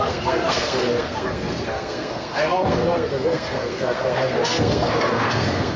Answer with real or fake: fake